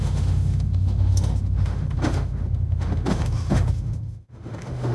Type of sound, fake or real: fake